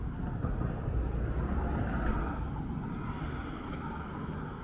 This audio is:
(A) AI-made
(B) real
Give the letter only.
B